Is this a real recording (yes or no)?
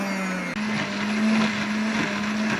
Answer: yes